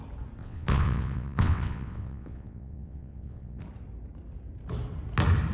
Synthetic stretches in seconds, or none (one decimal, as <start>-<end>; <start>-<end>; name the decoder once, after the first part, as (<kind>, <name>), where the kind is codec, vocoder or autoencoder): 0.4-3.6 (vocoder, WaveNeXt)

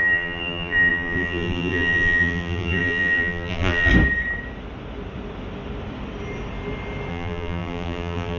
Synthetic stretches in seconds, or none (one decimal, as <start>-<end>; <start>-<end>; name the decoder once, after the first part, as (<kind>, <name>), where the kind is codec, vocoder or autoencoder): 0.0-3.9 (vocoder, BigVGAN v2); 7.1-8.4

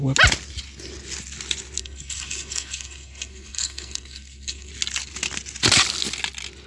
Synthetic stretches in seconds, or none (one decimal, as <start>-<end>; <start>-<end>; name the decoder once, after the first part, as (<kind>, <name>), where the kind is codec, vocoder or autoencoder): 1.8-4.7 (codec, SNAC)

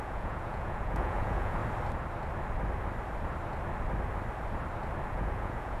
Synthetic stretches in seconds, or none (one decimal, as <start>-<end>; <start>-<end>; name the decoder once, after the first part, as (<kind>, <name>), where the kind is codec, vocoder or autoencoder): 0.0-1.6 (vocoder, Vocos); 5.1-5.8

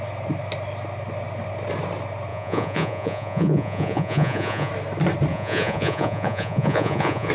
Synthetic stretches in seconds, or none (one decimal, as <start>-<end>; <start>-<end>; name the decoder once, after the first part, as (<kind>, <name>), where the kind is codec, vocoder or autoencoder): 2.3-4.7 (vocoder, Vocos); 5.3-7.3

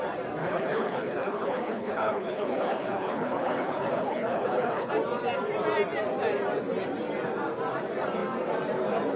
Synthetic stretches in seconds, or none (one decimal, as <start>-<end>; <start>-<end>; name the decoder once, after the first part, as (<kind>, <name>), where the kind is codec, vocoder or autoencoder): 0.4-4.9 (codec, HILCodec)

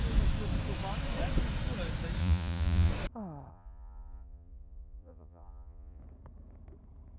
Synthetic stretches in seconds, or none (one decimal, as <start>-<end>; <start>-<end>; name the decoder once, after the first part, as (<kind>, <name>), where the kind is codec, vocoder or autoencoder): 2.2-2.9 (vocoder, Vocos); 3.5-6.0

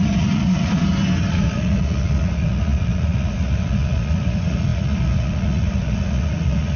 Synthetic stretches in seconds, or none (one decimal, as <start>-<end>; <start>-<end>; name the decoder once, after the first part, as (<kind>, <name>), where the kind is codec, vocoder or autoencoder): 0.0-0.8 (vocoder, Vocos); 1.3-6.8